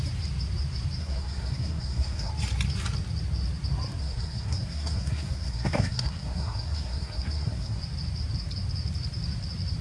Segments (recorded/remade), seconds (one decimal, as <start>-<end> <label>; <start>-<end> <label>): 0.0-1.0 recorded; 1.0-2.3 remade; 2.3-4.0 recorded; 4.0-7.8 remade; 7.8-9.8 recorded